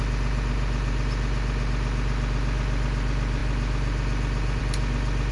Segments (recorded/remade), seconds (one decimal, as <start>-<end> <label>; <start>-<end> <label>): 0.0-5.3 recorded